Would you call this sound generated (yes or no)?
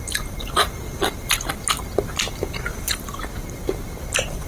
no